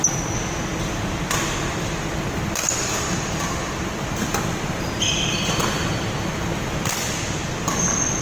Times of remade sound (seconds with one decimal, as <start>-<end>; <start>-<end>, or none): none